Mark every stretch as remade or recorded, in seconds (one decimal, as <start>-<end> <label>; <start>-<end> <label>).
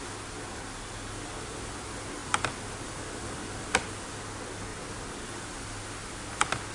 0.0-2.2 recorded; 2.2-3.7 remade; 3.7-4.7 recorded; 4.7-5.3 remade; 5.3-6.7 recorded